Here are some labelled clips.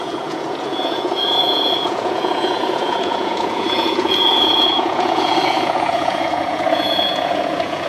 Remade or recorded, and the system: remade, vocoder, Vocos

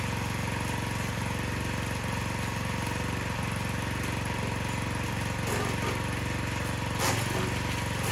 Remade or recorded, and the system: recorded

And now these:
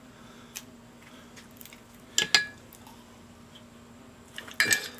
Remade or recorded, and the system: recorded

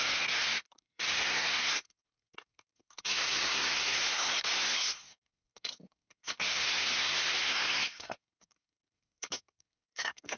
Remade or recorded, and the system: remade, codec, SNAC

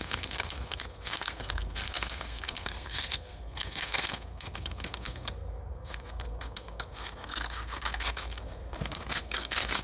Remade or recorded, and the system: remade, codec, SNAC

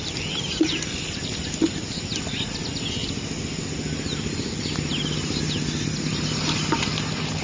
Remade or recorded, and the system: recorded